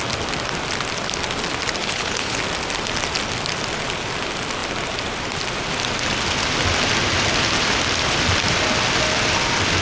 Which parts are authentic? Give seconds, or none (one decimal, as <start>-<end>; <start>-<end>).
0.0-1.8; 2.4-9.8